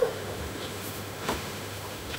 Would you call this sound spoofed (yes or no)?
yes